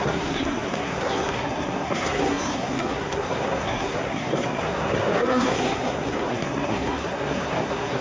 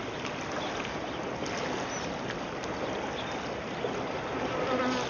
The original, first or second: second